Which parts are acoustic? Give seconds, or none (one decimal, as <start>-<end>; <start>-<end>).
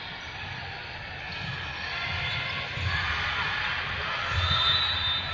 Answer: 0.0-5.3